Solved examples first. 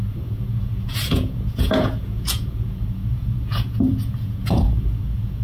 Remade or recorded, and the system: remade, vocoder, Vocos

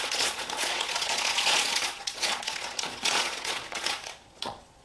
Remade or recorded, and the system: remade, vocoder, Vocos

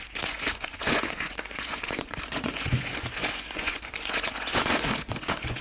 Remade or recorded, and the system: remade, vocoder, Vocos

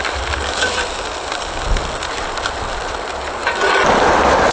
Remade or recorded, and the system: recorded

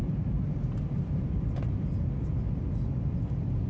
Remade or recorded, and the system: recorded